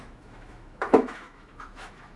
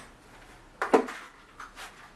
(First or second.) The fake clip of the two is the first